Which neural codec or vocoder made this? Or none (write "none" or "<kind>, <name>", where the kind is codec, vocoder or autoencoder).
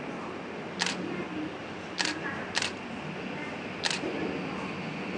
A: none